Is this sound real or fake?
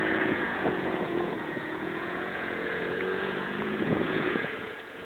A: fake